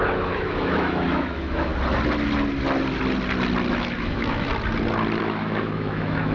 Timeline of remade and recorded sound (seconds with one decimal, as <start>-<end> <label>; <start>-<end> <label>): 0.0-1.7 remade; 1.7-3.7 recorded; 3.7-4.5 remade; 4.5-5.2 recorded; 5.2-6.3 remade